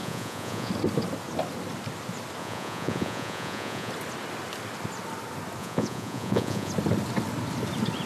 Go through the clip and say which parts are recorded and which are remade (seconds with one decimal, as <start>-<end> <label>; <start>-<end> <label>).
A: 0.0-0.7 remade; 0.7-2.4 recorded; 2.4-3.9 remade; 3.9-5.6 recorded; 5.6-6.7 remade; 6.7-8.1 recorded